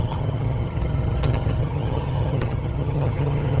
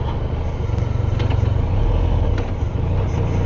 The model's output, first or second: first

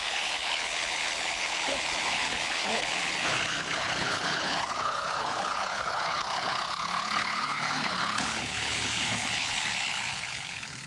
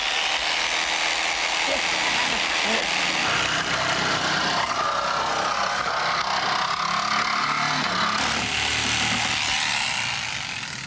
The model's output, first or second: first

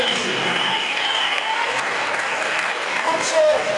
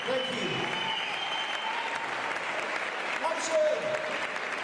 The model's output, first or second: first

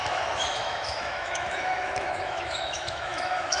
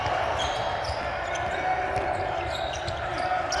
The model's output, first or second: first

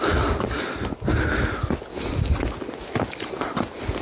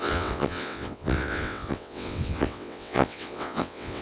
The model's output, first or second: second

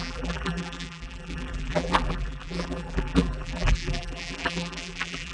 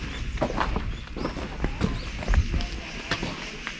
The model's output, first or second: first